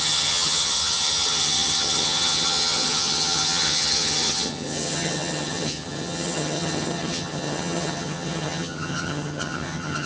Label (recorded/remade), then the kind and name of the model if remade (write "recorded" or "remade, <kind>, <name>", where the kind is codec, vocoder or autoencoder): remade, vocoder, HiFi-GAN